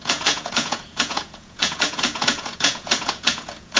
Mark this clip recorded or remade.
remade